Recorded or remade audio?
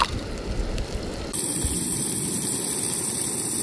remade